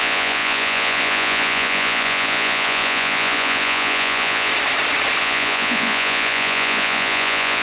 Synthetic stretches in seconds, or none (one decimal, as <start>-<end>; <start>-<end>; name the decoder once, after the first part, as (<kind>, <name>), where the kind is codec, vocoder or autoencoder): 0.0-4.5 (vocoder, Vocos); 5.2-7.6